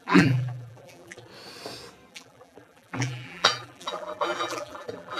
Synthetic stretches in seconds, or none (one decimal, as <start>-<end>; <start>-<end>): 0.0-1.3; 2.1-5.2